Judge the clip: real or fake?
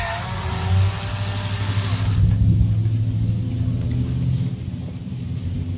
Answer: real